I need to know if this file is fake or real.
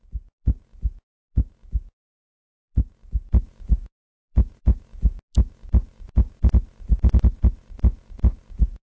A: real